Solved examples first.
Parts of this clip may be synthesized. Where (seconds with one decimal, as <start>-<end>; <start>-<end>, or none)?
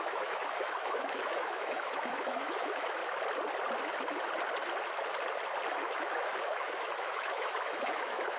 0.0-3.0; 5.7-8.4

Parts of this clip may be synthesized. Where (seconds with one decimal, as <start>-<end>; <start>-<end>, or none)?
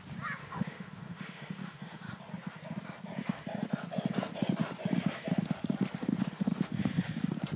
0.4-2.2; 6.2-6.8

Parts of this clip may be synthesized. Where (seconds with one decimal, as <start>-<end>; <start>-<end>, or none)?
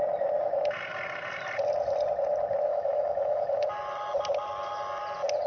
2.7-3.7